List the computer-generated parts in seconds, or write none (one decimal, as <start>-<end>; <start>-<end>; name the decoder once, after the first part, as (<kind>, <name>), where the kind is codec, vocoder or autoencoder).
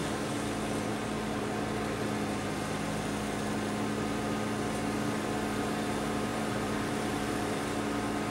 6.3-7.6 (vocoder, BigVGAN v2)